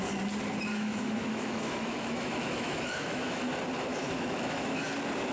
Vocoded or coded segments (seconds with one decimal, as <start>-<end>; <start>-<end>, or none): 0.7-3.4; 3.9-4.8